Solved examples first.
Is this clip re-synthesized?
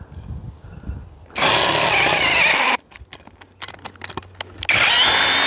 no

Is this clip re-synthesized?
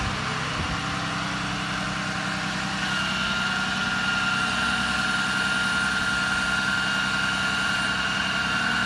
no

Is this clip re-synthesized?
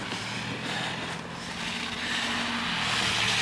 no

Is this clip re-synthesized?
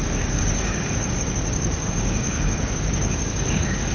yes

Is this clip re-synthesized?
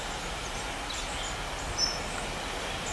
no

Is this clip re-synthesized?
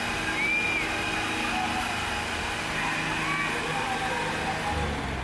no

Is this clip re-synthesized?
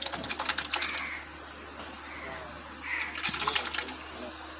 no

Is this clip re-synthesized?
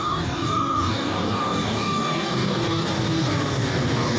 yes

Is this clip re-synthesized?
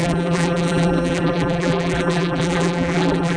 yes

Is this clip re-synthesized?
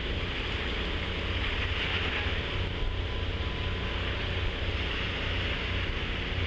no